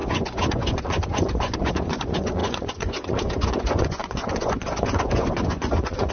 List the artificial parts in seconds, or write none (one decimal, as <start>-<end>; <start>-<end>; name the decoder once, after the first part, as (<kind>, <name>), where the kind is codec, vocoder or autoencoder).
0.0-6.1 (vocoder, Vocos)